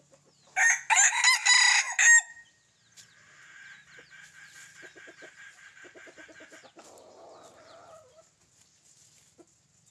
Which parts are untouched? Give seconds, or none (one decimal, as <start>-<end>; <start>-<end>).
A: 0.0-9.9